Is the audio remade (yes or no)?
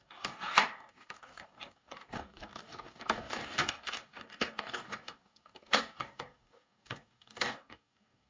yes